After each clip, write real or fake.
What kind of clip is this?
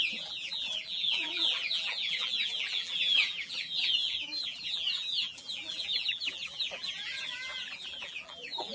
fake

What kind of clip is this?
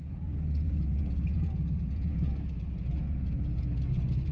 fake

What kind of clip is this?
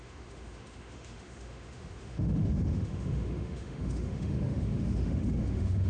fake